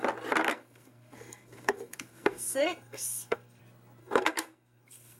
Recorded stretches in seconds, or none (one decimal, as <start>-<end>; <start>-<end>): 0.0-0.5; 3.6-4.0